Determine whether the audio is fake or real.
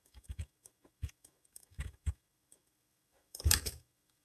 fake